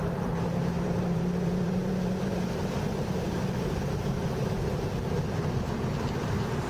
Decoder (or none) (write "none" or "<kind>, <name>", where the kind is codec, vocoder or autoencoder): vocoder, BigVGAN v2